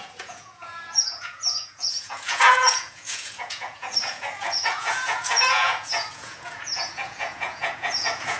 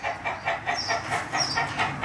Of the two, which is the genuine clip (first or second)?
second